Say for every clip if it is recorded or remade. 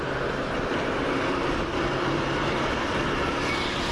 recorded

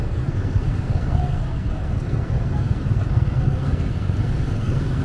remade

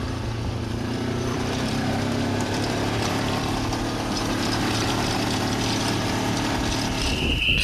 remade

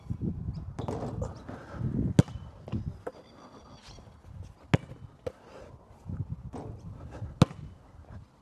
recorded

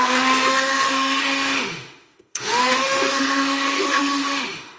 remade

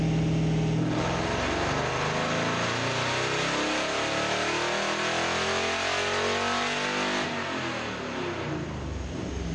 recorded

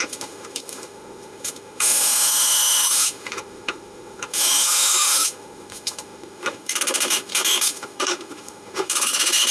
remade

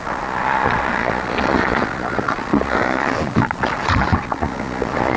remade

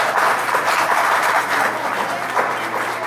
recorded